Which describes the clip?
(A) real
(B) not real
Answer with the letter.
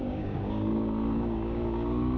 B